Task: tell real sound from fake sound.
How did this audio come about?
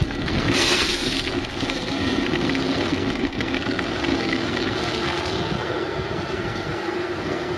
fake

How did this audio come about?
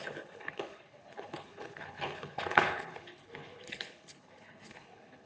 fake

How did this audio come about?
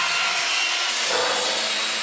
real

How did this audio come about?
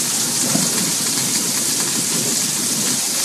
fake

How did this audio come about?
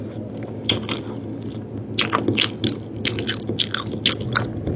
real